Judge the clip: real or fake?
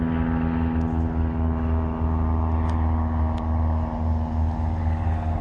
real